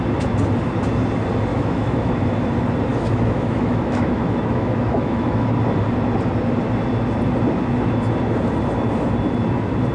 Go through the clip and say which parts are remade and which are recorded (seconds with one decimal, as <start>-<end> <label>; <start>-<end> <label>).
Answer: 0.0-1.5 recorded; 1.5-2.1 remade; 2.1-2.9 recorded; 2.9-5.5 remade; 5.5-9.9 recorded